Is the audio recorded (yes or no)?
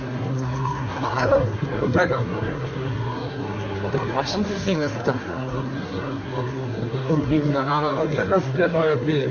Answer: no